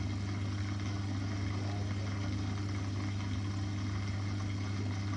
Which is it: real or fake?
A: real